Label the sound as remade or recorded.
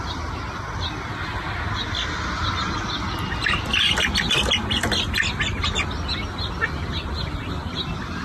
recorded